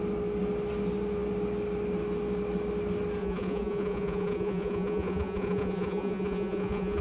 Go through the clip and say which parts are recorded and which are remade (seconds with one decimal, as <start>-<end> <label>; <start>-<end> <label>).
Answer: 0.0-3.2 recorded; 3.2-7.0 remade